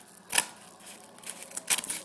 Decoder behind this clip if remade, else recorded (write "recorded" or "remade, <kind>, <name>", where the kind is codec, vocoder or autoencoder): recorded